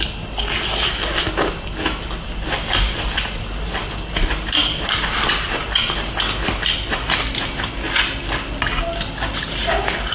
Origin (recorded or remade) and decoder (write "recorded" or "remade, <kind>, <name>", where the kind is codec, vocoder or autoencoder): recorded